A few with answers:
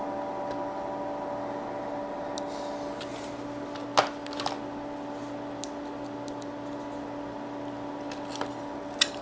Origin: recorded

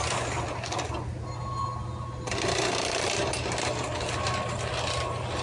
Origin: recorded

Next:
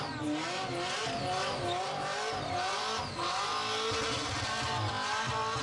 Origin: recorded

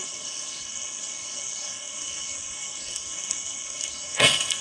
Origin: remade